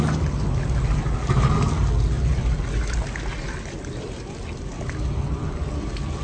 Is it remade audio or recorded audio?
recorded